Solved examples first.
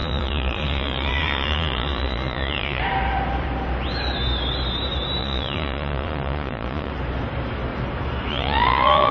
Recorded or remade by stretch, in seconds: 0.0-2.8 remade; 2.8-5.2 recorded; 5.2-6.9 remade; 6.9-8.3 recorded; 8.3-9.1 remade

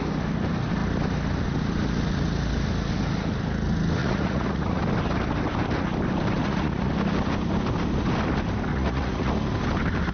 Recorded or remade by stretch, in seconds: 0.0-4.0 recorded; 4.0-4.8 remade; 4.8-6.4 recorded; 6.4-6.9 remade; 6.9-8.7 recorded; 8.7-9.3 remade; 9.3-10.1 recorded

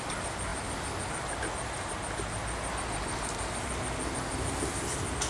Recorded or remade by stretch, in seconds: 0.0-5.3 recorded

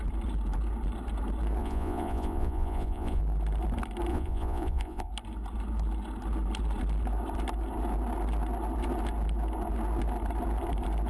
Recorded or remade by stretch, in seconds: 0.0-1.6 recorded; 1.6-3.2 remade; 3.2-4.1 recorded; 4.1-5.1 remade; 5.1-11.1 recorded